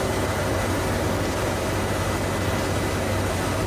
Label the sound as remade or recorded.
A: recorded